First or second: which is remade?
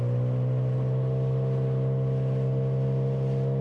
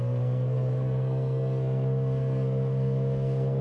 second